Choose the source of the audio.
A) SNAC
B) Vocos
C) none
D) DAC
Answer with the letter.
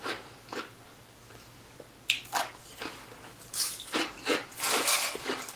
D